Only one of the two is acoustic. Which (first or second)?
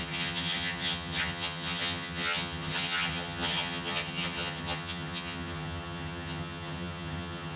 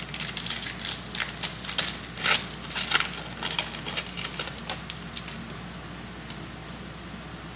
second